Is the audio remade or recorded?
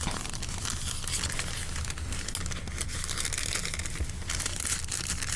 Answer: recorded